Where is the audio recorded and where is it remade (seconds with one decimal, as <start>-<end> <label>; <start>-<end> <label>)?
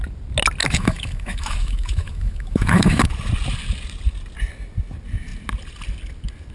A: 0.0-0.6 recorded; 0.6-3.1 remade; 3.1-6.5 recorded